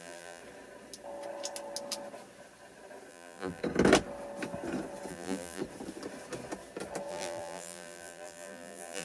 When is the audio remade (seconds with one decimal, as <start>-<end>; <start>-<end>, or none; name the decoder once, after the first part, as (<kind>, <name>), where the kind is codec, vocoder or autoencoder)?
0.0-0.4 (vocoder, BigVGAN v2); 3.1-3.6; 5.1-5.6; 7.1-9.0

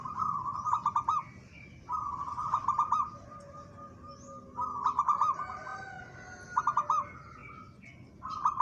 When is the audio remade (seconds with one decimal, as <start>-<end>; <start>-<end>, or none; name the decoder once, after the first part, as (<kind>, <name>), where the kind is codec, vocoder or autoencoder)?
none

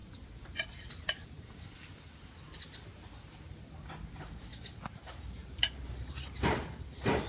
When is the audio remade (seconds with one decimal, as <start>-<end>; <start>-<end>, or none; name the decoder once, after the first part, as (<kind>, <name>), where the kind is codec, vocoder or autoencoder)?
4.1-7.3 (vocoder, BigVGAN v2)